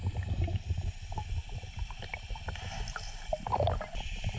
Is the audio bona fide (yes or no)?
yes